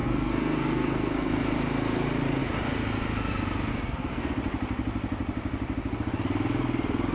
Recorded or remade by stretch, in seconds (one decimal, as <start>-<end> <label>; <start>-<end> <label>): 0.0-1.5 remade; 1.5-3.7 recorded; 3.7-4.3 remade; 4.3-7.1 recorded